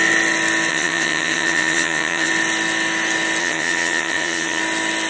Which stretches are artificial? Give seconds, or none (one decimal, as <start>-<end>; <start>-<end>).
0.7-2.3; 3.4-4.6